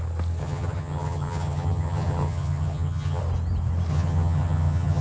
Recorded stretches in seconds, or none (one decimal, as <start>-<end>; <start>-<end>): 0.0-0.4; 3.2-3.9